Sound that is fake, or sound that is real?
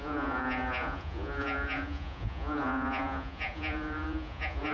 fake